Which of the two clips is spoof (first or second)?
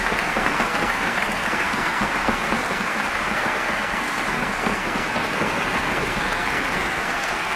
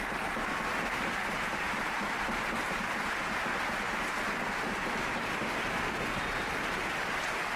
first